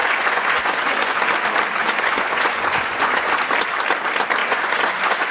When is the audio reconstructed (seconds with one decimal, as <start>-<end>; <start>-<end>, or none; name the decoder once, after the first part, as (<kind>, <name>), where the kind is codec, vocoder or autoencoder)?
0.0-1.2 (vocoder, Vocos); 1.8-3.4; 4.4-5.3